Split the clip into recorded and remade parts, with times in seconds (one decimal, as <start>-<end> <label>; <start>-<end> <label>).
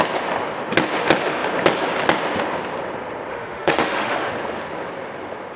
0.0-3.3 recorded; 3.3-4.3 remade; 4.3-5.6 recorded